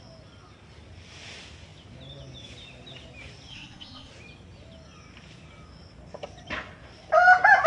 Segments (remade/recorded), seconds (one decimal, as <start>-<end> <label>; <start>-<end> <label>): 0.0-3.5 recorded; 3.5-4.1 remade; 4.1-7.7 recorded